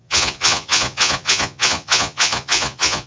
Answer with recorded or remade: remade